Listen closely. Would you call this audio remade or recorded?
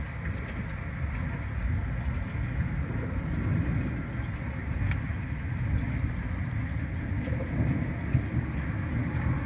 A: recorded